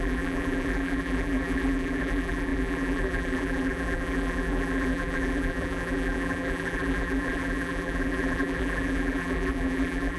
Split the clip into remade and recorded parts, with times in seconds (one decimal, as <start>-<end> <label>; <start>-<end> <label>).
0.0-10.2 remade